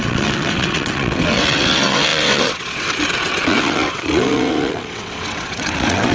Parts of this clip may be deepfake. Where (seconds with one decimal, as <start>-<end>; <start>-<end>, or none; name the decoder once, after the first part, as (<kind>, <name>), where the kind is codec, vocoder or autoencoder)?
0.0-6.1 (vocoder, WaveNeXt)